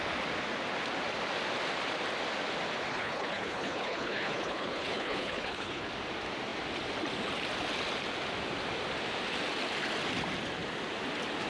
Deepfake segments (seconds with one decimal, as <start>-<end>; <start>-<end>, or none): 2.9-5.9